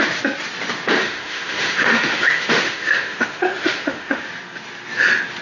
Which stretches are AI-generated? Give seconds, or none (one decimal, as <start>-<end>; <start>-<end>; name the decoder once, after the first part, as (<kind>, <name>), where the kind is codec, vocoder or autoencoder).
1.0-4.2 (autoencoder, DAC-VAE)